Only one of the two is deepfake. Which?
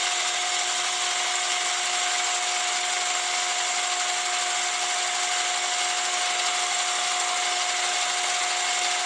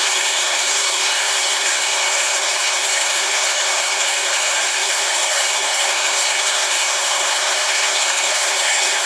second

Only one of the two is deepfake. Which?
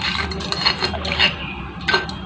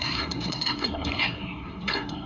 second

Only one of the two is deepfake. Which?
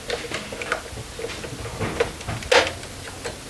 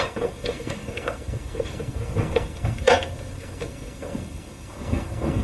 second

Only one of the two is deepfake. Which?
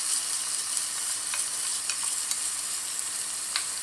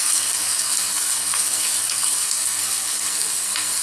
second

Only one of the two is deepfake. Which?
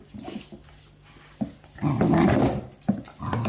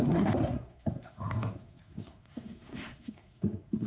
second